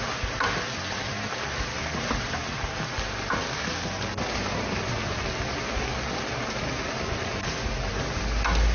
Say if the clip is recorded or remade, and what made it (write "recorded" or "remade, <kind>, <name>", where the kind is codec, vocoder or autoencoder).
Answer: recorded